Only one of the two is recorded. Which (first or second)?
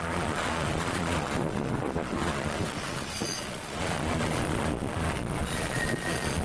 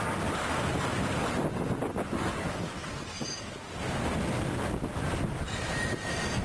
second